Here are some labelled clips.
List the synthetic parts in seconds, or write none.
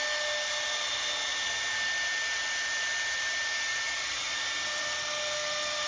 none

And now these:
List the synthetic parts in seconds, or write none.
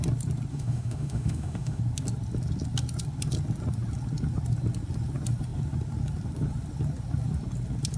0.5-1.8